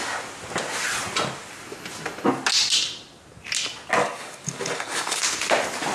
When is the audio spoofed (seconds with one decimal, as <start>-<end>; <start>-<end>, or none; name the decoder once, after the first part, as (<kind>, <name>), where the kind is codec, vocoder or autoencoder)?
4.0-5.2 (codec, DAC)